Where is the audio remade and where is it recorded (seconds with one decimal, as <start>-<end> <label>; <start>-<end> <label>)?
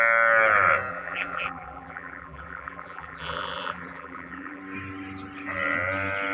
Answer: 0.0-0.9 recorded; 0.9-4.6 remade; 4.6-6.3 recorded